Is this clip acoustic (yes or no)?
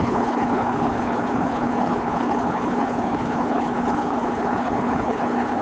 no